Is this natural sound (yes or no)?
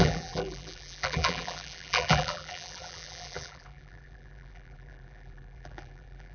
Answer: no